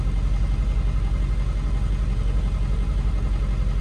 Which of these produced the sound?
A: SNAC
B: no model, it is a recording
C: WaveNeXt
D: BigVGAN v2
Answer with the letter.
B